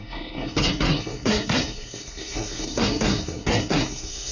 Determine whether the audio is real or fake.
fake